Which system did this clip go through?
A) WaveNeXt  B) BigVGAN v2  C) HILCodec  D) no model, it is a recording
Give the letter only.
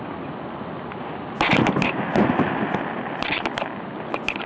D